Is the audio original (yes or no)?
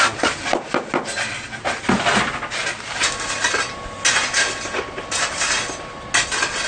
yes